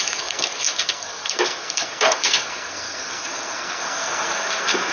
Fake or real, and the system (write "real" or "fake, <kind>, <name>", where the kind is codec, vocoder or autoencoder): fake, codec, SNAC